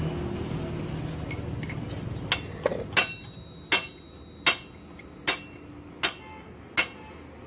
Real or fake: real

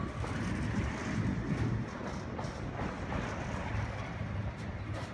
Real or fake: real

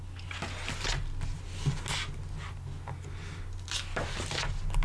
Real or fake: real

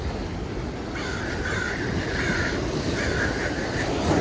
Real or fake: real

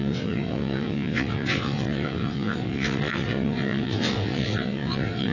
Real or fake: fake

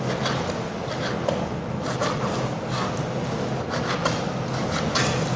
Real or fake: real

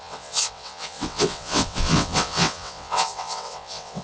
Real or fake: fake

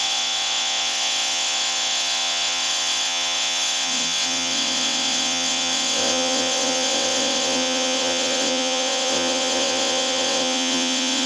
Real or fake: fake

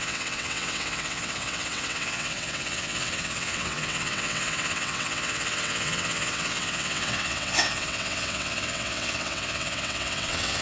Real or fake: fake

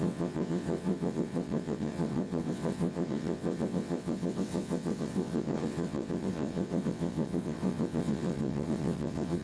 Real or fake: fake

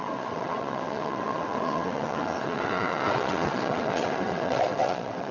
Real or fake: fake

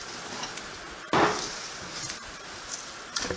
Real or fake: real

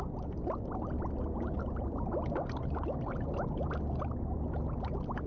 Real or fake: real